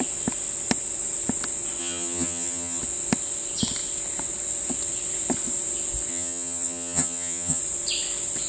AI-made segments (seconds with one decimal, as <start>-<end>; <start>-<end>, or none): 1.8-2.8; 6.1-7.6